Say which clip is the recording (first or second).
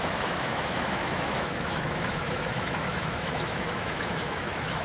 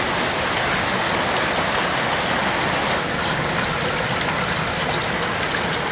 second